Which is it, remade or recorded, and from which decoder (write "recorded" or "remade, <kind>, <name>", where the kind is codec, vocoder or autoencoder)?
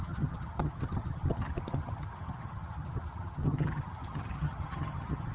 remade, vocoder, HiFi-GAN